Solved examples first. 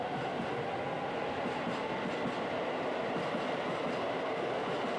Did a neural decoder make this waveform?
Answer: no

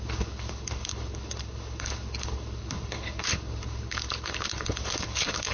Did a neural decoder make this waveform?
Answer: yes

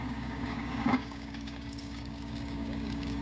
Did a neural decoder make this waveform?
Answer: yes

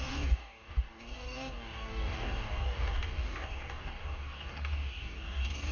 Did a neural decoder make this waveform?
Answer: yes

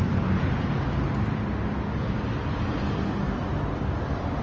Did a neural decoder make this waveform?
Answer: no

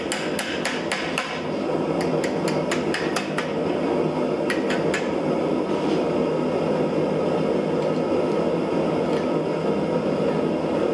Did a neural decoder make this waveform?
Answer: no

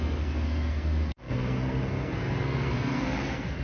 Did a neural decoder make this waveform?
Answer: yes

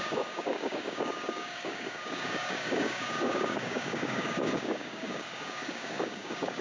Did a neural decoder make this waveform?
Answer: yes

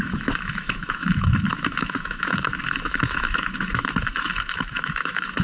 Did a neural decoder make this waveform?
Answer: yes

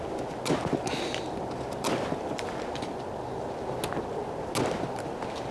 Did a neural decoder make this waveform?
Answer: no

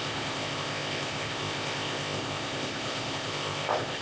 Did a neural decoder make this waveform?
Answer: yes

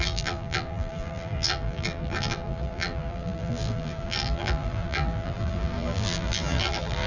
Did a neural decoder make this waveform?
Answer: yes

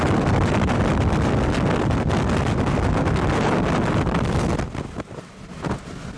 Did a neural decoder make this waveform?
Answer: yes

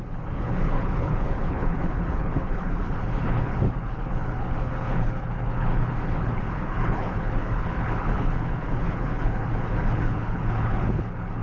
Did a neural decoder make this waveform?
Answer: yes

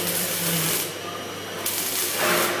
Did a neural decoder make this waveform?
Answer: no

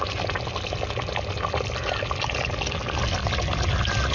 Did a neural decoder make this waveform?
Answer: no